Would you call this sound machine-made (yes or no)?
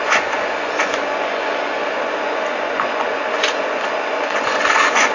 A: yes